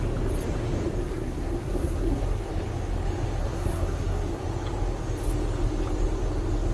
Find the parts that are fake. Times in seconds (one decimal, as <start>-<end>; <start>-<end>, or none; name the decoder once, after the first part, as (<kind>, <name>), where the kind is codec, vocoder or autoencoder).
1.0-2.5 (codec, SNAC); 3.4-4.4